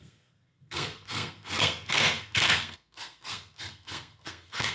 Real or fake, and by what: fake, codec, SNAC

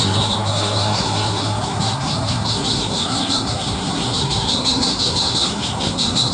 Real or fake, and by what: fake, codec, SNAC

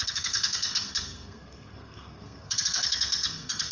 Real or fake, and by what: fake, codec, SNAC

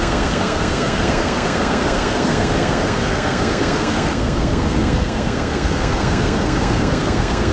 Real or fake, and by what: fake, codec, SNAC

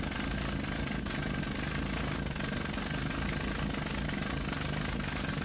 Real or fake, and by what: real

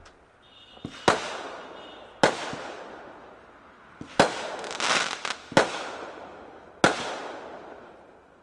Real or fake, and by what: real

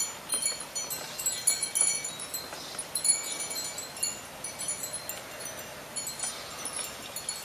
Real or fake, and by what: real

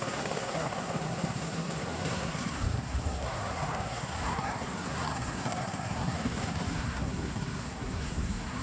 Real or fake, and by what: fake, codec, SNAC